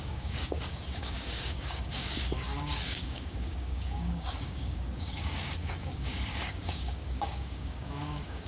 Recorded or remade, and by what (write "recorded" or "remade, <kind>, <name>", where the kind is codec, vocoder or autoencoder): remade, codec, DAC